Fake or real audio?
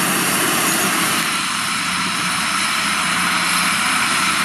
fake